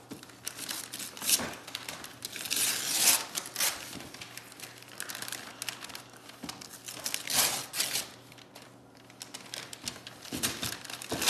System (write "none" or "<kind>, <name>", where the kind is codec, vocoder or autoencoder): none